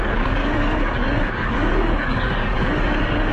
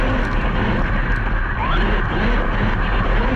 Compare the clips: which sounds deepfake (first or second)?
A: first